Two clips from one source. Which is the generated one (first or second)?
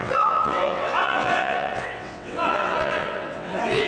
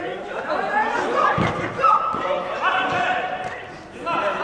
first